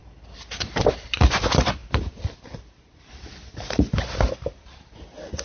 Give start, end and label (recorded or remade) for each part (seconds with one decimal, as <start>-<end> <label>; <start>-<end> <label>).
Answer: 0.0-1.8 remade; 1.8-3.0 recorded; 3.0-5.4 remade